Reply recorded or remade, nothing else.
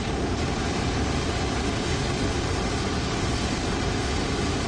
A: recorded